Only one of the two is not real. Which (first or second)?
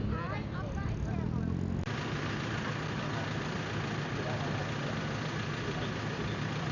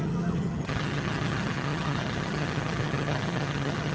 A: second